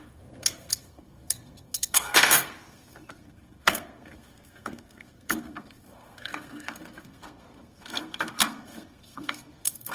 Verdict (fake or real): fake